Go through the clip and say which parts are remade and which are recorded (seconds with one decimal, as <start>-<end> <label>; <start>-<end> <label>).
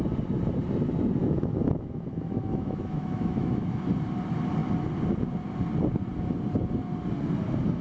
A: 0.0-1.2 recorded; 1.2-3.8 remade; 3.8-7.8 recorded